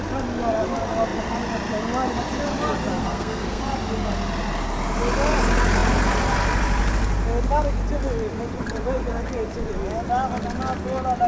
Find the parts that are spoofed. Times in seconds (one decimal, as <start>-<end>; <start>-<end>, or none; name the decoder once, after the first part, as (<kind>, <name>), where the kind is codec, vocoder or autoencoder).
3.0-3.6 (codec, SNAC)